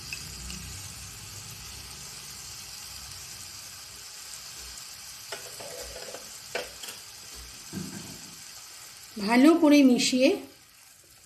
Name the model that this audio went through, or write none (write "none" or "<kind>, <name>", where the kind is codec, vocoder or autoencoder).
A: none